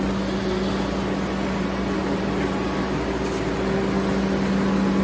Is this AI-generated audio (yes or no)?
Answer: no